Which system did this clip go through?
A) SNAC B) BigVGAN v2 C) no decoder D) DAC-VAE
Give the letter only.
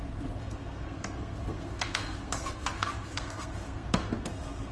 A